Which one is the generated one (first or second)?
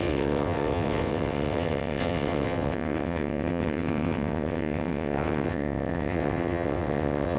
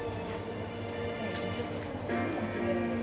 first